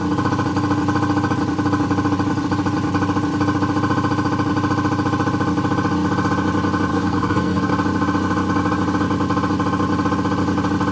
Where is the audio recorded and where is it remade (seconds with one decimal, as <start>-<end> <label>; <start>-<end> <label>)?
0.0-6.9 recorded; 6.9-7.7 remade; 7.7-10.9 recorded